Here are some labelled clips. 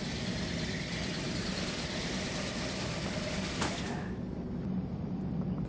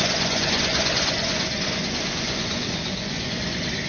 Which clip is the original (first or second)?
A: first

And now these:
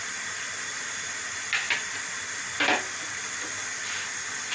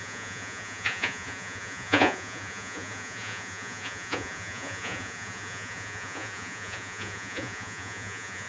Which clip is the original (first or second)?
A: first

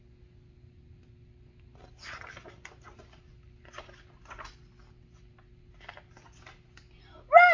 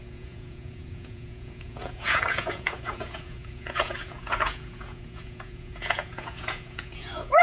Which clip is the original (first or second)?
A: first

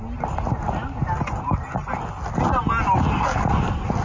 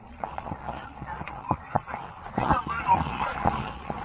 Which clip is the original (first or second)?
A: first